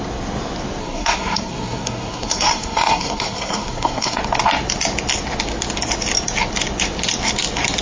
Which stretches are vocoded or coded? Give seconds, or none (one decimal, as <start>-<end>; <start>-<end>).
0.8-4.2